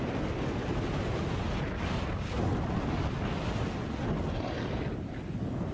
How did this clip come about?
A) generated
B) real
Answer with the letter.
B